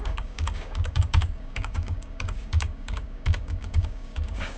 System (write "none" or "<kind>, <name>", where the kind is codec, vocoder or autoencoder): codec, DAC